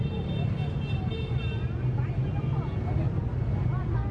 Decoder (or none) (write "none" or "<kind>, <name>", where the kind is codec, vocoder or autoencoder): none